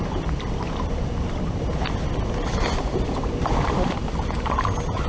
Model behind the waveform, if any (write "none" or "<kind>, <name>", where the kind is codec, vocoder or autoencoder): vocoder, BigVGAN v2